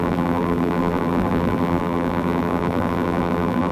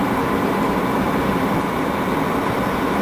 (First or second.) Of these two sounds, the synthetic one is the first